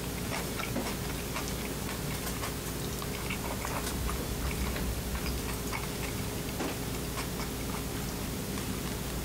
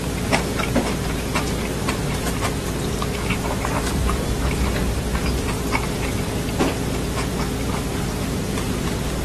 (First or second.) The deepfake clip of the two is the second